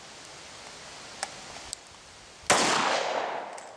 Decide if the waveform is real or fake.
real